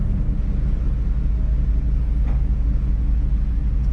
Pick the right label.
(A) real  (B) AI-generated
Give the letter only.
A